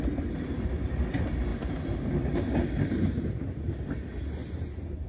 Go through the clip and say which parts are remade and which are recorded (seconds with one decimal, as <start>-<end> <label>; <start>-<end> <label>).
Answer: 0.0-1.5 recorded; 1.5-3.5 remade; 3.5-4.4 recorded; 4.4-5.1 remade